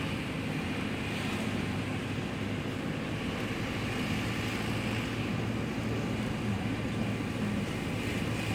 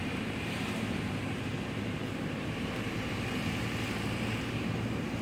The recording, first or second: first